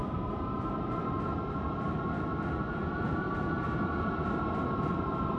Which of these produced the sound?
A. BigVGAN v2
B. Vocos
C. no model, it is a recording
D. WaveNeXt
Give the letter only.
C